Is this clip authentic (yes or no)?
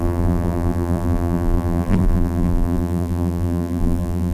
no